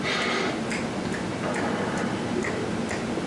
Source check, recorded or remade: recorded